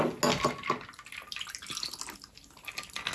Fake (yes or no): no